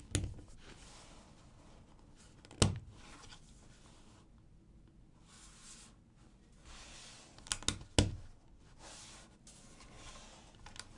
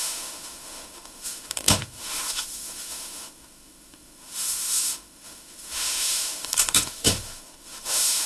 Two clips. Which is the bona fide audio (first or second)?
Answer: first